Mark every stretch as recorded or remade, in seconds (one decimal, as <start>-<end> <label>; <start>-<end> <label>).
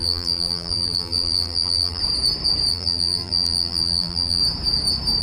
0.0-2.0 remade; 2.0-2.7 recorded; 2.7-4.4 remade; 4.4-5.2 recorded